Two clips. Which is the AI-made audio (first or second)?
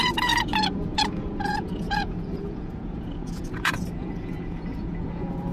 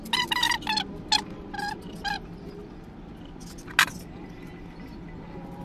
first